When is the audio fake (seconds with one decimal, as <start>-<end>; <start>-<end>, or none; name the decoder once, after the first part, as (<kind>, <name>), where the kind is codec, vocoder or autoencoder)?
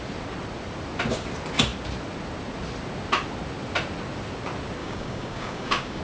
4.8-6.0 (codec, DAC)